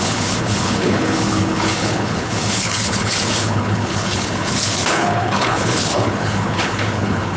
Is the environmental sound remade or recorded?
remade